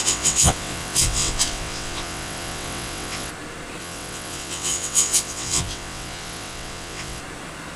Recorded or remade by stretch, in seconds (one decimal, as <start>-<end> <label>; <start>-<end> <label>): 0.0-3.3 remade; 3.3-3.8 recorded; 3.8-7.2 remade; 7.2-7.8 recorded